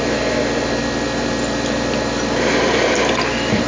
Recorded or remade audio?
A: recorded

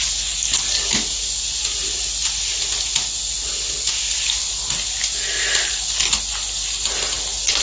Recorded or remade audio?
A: recorded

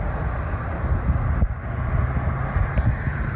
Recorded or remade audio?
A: recorded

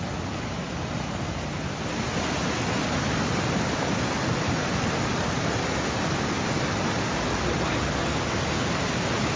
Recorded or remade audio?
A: recorded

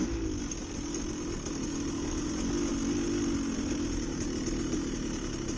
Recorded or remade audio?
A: recorded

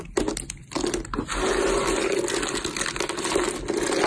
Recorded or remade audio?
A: recorded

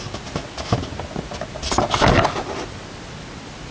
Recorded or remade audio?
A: recorded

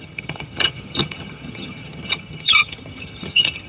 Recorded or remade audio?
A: remade